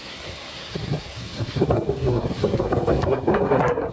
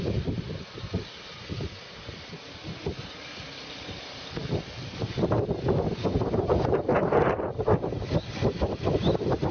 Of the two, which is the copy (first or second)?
first